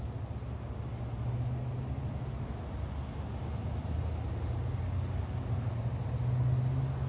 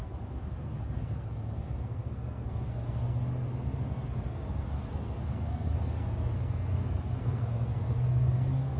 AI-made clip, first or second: second